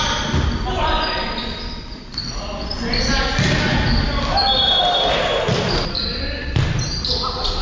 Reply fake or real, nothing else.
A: real